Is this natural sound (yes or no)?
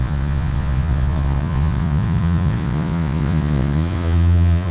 no